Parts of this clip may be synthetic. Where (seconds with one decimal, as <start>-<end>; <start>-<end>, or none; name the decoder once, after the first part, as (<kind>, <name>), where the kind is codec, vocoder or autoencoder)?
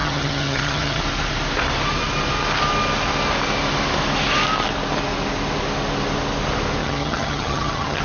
0.0-1.0 (vocoder, HiFi-GAN); 6.8-8.0